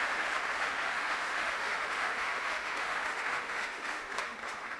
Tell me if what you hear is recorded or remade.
remade